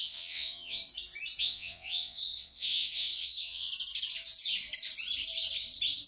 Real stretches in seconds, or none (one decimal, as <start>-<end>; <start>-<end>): 0.8-1.4; 3.7-6.1